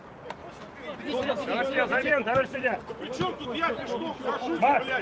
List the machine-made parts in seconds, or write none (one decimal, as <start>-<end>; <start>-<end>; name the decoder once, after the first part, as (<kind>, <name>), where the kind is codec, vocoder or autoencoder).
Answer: 2.0-2.8 (vocoder, Vocos)

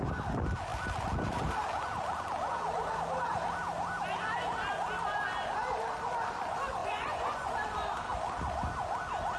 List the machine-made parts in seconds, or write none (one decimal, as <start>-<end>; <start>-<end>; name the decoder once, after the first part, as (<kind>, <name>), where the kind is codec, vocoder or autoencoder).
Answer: 6.8-7.5 (vocoder, Vocos)

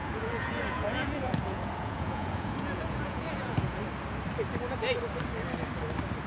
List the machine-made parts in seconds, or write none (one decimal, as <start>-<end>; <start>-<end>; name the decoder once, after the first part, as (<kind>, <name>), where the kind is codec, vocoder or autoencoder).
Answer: 0.0-3.8 (vocoder, Vocos)

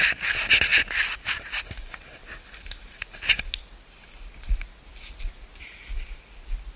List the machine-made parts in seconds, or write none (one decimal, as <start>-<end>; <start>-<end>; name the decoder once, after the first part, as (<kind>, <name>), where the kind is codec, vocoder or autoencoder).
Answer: none

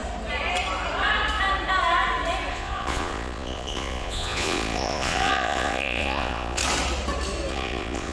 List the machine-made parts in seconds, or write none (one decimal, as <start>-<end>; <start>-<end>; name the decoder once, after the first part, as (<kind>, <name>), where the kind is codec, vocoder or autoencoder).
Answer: 2.5-6.6 (vocoder, Vocos); 7.5-8.1

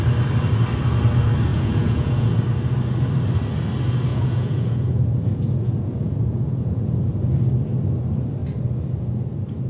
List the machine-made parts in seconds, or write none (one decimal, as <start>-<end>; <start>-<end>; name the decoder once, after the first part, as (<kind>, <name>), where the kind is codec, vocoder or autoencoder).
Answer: 1.5-2.3 (vocoder, Vocos); 4.1-7.1